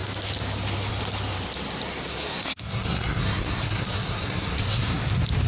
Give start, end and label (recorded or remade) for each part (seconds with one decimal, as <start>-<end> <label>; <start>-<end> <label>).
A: 0.0-2.1 recorded; 2.1-5.0 remade; 5.0-5.5 recorded